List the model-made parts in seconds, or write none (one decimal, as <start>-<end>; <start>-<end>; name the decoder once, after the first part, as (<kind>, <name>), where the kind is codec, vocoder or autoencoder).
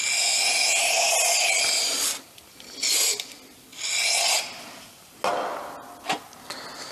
none